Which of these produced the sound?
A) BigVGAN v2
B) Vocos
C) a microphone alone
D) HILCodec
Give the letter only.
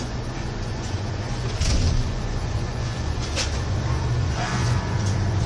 B